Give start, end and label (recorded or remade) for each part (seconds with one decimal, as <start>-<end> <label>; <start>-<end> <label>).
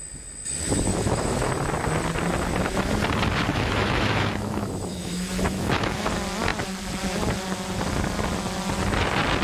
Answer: 0.0-0.9 recorded; 0.9-1.5 remade; 1.5-3.5 recorded; 3.5-6.1 remade; 6.1-9.4 recorded